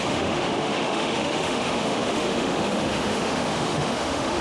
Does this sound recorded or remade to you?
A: remade